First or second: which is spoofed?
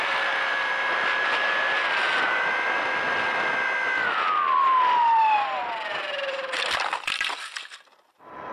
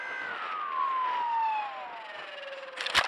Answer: first